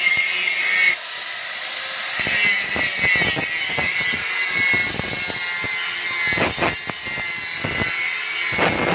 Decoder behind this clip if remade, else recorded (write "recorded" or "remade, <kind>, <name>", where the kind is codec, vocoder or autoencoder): recorded